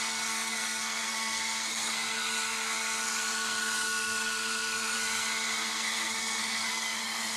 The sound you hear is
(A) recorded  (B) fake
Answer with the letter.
B